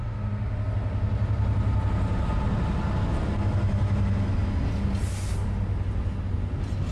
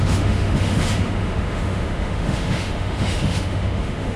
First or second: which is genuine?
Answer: first